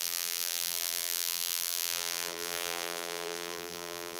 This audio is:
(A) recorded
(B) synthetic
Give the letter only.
B